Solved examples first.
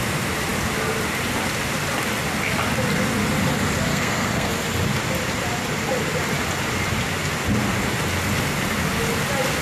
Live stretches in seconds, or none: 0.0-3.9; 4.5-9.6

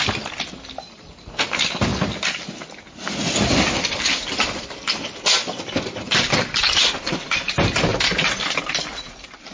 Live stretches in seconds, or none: 0.0-9.5

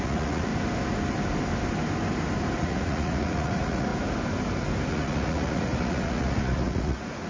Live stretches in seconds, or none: 0.5-2.6; 3.9-4.9

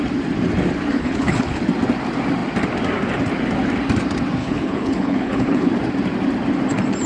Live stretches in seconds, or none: 0.0-0.9; 1.6-4.4; 5.7-7.1

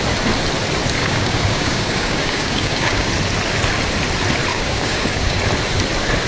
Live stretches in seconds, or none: 0.0-1.0; 3.1-4.5; 5.4-6.3

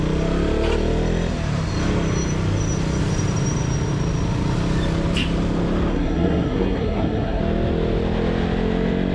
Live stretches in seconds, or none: 0.0-5.9; 7.4-9.1

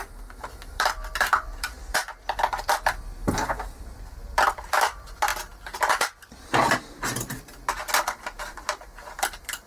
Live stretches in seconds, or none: 0.0-0.5; 2.0-3.5